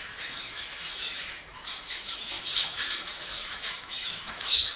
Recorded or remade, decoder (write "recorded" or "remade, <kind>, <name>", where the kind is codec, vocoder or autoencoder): remade, autoencoder, DAC-VAE